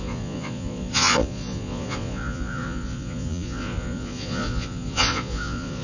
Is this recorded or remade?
remade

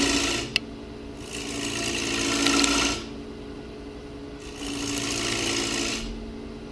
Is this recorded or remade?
recorded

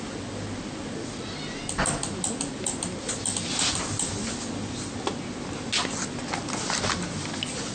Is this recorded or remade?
recorded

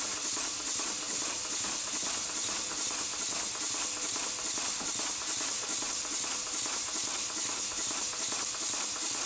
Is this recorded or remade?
recorded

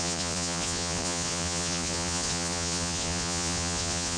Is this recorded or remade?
remade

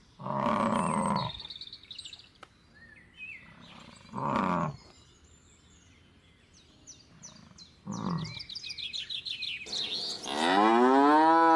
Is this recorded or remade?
recorded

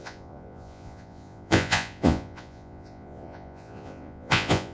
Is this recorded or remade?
remade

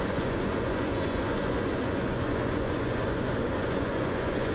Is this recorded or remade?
remade